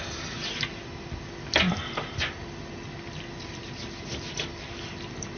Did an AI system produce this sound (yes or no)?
no